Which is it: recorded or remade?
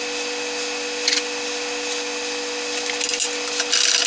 recorded